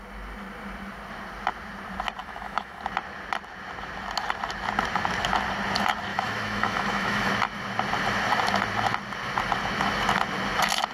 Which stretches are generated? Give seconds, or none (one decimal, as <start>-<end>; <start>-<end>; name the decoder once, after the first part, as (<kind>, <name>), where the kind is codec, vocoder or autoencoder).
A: 2.2-2.8 (autoencoder, DAC-VAE); 6.1-7.3